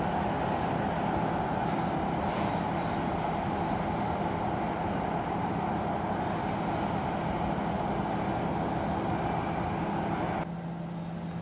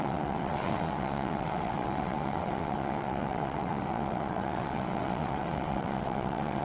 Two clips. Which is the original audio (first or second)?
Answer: first